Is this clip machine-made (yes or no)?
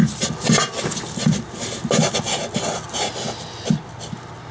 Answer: no